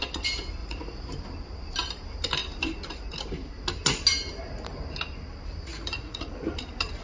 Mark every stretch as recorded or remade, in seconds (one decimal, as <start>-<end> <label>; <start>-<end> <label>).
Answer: 0.0-0.6 recorded; 0.6-1.1 remade; 1.1-5.7 recorded; 5.7-6.3 remade; 6.3-7.0 recorded